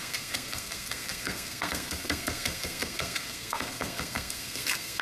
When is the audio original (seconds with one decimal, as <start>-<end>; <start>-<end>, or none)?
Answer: none

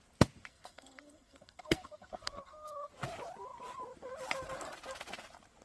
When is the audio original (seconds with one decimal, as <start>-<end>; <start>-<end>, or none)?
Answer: 0.0-0.5; 2.9-5.6

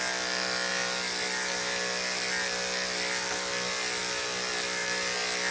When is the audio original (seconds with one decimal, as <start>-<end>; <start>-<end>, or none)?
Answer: 0.0-5.5

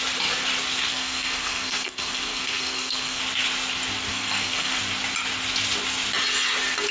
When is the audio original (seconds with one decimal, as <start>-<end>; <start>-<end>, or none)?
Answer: 0.0-0.9; 3.2-4.1; 4.8-6.9

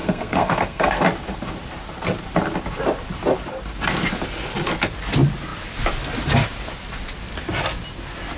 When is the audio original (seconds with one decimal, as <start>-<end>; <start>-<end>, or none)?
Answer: 1.0-8.4